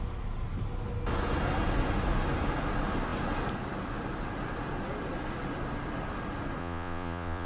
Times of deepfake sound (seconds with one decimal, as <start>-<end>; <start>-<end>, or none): 6.6-7.5